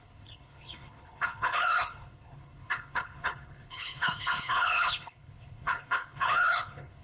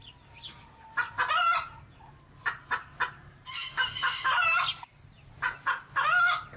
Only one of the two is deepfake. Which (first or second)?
first